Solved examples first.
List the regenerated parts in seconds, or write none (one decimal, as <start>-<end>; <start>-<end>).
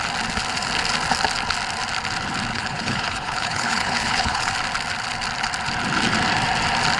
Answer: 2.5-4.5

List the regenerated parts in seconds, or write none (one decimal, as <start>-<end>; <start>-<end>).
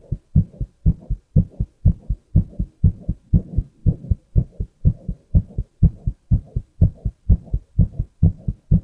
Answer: 3.8-8.0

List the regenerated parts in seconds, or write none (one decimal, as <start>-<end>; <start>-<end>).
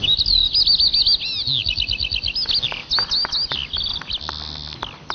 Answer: none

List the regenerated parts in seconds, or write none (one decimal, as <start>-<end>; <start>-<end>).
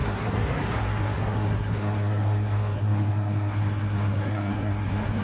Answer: 0.0-5.2